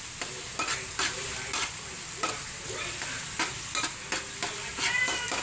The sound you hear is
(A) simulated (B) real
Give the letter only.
B